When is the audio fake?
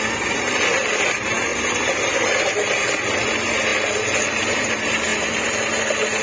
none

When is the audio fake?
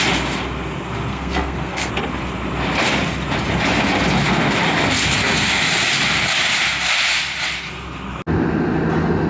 1.1-1.9 (codec, SNAC)